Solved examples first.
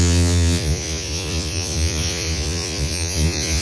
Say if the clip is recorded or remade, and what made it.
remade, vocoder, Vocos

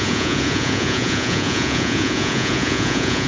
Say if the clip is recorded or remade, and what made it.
remade, vocoder, Vocos